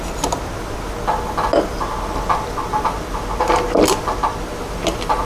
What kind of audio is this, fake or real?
real